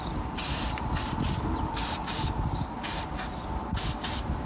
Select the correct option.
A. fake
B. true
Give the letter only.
B